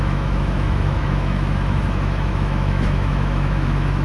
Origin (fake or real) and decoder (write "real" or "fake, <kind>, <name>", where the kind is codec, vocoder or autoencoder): fake, autoencoder, DAC-VAE